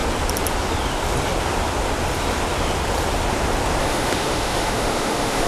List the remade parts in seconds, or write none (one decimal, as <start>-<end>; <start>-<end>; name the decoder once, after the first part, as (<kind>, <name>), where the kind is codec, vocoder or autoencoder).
3.8-5.5 (autoencoder, DAC-VAE)